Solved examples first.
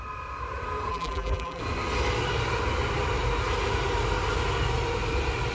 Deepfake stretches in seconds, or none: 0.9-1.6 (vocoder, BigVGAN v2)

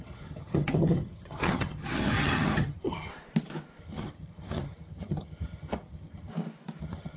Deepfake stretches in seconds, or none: 0.0-3.1 (vocoder, HiFi-GAN); 3.8-6.3; 6.8-7.2

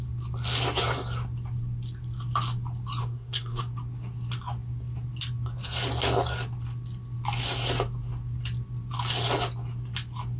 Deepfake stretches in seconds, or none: 3.0-3.6 (codec, SNAC)

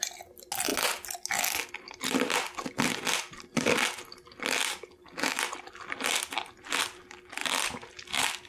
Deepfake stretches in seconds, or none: none

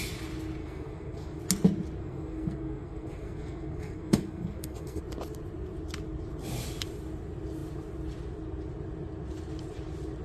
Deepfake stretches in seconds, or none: 0.6-1.4 (codec, SNAC); 2.0-5.0

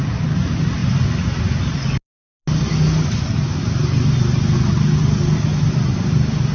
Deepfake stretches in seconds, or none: none

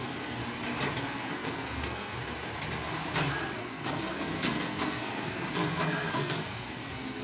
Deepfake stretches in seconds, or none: 0.0-0.4 (codec, SNAC); 1.0-2.2; 3.6-7.2

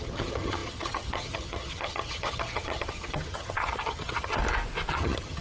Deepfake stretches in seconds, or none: 0.0-4.4 (vocoder, HiFi-GAN); 4.9-5.4